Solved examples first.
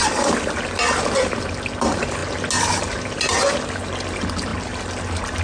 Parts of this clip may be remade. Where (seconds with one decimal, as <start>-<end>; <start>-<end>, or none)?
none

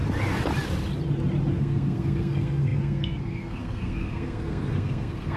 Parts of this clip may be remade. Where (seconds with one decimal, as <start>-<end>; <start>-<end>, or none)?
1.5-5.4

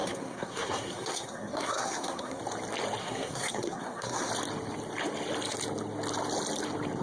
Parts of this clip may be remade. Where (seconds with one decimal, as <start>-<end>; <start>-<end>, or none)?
0.0-2.4; 3.0-4.3

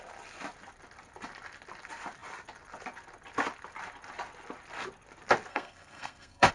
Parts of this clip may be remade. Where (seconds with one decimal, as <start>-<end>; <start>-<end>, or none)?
5.5-6.5

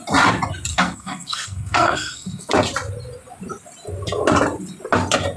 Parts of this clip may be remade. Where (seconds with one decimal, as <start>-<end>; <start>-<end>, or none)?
0.7-2.5

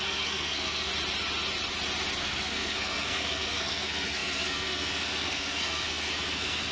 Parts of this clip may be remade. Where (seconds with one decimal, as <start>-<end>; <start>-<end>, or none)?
0.0-0.9; 2.2-6.7